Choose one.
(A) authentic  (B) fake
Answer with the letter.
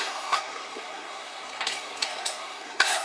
B